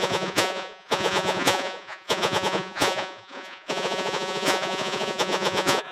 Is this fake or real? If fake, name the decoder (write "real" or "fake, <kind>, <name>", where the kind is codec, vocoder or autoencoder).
fake, vocoder, Vocos